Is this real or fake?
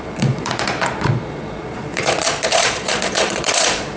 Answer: fake